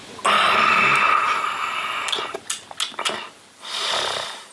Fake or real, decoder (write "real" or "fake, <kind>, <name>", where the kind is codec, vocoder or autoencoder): real